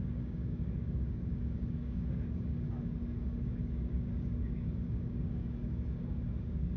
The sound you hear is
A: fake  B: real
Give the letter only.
A